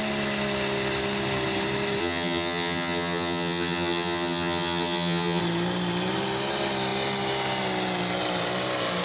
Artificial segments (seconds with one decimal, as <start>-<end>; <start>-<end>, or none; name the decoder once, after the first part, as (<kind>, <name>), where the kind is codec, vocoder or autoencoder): 2.0-5.4 (vocoder, HiFi-GAN)